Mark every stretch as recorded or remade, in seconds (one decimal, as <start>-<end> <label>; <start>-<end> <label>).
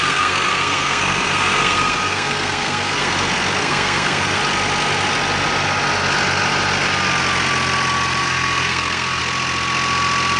0.0-3.1 remade; 3.1-3.6 recorded; 3.6-4.4 remade; 4.4-8.2 recorded; 8.2-9.2 remade; 9.2-10.4 recorded